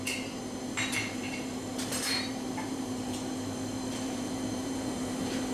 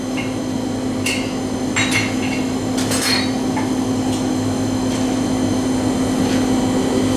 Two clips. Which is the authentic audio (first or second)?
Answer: second